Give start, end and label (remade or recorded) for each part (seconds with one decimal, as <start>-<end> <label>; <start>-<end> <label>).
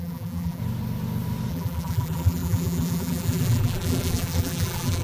0.0-0.6 remade; 0.6-1.5 recorded; 1.5-5.0 remade